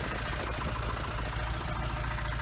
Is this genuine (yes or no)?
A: no